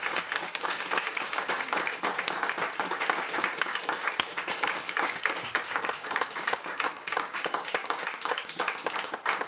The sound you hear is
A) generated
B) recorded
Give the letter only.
A